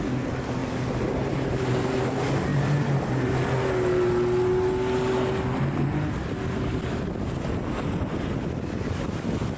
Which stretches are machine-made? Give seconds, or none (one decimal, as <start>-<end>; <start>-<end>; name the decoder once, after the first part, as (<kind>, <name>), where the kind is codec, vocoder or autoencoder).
none

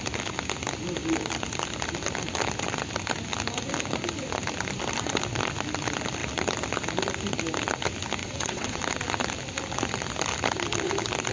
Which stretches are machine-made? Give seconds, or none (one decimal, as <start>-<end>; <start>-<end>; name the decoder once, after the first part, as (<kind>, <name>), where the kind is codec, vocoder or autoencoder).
8.2-8.8 (vocoder, WaveNeXt)

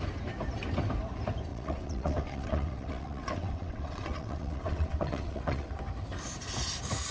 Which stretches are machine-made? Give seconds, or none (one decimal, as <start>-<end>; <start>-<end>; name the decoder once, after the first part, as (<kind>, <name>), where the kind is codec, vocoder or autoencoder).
1.5-5.8 (vocoder, WaveNeXt)

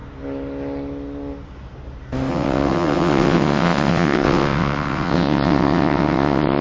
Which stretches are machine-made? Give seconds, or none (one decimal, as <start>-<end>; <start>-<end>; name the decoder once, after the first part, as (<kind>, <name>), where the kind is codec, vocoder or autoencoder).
2.3-6.6 (vocoder, WaveNeXt)

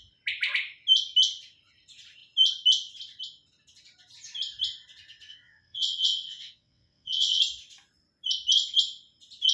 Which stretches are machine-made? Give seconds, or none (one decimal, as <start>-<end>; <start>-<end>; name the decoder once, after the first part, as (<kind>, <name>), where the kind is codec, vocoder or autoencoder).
5.3-7.4 (vocoder, WaveNeXt)